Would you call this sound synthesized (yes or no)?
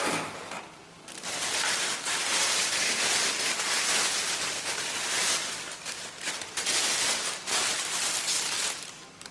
yes